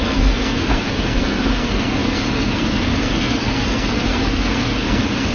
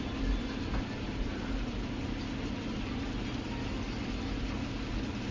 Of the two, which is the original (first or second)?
second